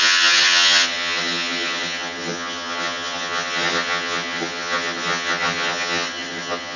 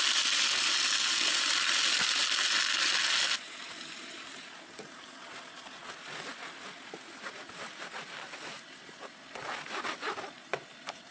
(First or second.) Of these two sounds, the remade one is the first